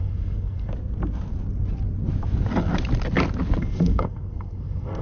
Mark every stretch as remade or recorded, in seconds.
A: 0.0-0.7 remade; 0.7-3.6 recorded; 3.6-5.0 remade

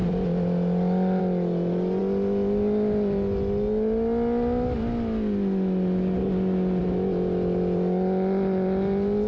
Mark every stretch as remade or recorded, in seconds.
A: 0.0-9.3 recorded

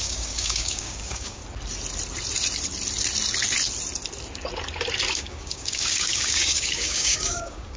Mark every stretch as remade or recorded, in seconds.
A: 0.0-1.4 remade; 1.4-5.1 recorded; 5.1-7.8 remade

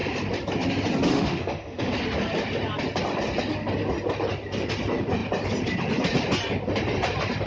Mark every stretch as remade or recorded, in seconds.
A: 0.0-1.1 recorded; 1.1-1.9 remade; 1.9-7.5 recorded

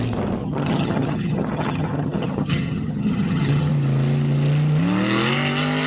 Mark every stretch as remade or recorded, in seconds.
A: 0.0-0.4 recorded; 0.4-3.7 remade; 3.7-5.9 recorded